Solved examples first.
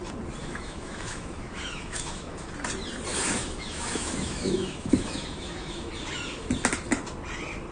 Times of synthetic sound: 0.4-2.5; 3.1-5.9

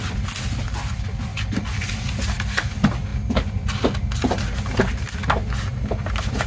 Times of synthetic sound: none

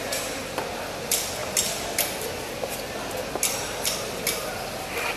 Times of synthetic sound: none

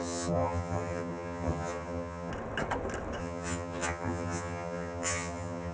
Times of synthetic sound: 0.0-2.3; 3.2-5.7